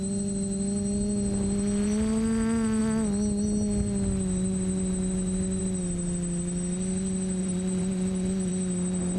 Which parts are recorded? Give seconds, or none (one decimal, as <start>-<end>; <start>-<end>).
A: 0.0-7.4; 8.5-9.2